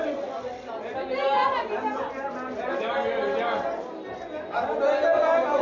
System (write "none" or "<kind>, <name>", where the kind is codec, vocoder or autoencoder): none